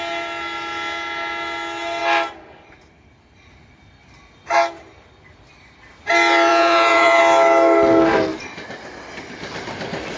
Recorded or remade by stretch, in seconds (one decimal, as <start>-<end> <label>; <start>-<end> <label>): 0.0-6.5 recorded; 6.5-7.2 remade; 7.2-10.2 recorded